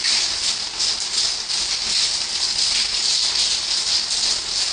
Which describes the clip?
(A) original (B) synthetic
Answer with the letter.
A